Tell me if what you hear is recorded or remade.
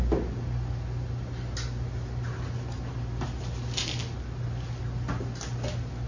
recorded